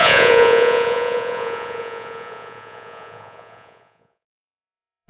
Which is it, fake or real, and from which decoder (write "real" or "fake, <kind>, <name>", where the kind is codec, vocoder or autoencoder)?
fake, vocoder, Vocos